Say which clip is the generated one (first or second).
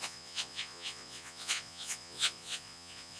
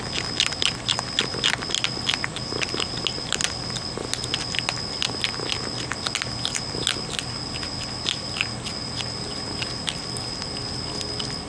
first